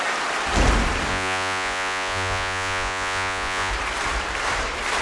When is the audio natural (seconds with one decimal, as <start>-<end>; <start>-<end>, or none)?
0.0-1.1; 3.7-5.0